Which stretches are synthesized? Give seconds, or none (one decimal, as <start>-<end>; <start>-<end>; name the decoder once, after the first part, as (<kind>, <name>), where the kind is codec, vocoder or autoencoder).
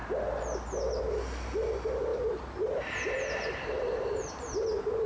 none